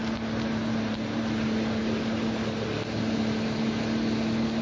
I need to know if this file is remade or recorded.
recorded